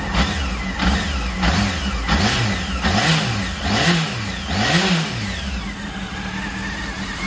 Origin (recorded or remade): recorded